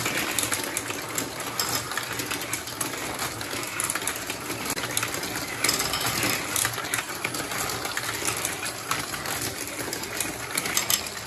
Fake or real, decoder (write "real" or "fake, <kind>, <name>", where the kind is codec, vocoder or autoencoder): real